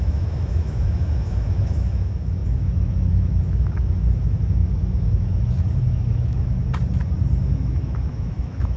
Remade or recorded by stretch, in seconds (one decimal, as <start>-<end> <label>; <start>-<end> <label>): 0.0-6.6 remade; 6.6-7.4 recorded; 7.4-8.8 remade